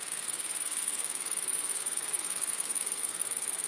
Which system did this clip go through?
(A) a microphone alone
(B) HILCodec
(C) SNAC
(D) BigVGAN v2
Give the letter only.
C